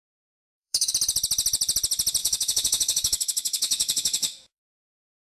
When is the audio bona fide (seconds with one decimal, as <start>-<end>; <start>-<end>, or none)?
0.0-0.4; 0.9-2.2